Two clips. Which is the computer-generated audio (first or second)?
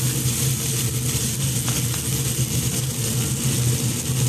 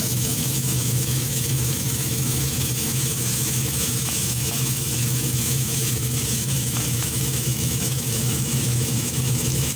second